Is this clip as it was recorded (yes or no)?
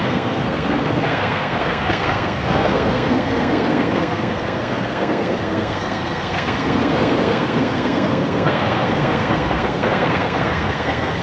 no